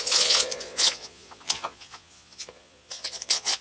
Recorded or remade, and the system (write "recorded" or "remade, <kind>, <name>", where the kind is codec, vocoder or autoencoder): remade, vocoder, Vocos